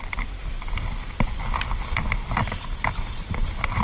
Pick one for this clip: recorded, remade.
remade